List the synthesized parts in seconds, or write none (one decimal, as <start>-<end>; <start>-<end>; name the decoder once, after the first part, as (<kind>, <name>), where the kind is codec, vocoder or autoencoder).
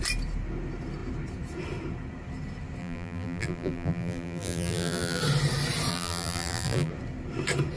2.8-5.2 (vocoder, BigVGAN v2); 5.9-6.9